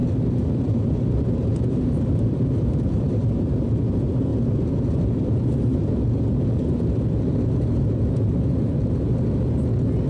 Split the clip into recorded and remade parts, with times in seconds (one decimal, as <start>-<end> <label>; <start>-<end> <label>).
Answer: 0.0-3.8 remade; 3.8-4.3 recorded; 4.3-5.9 remade; 5.9-10.1 recorded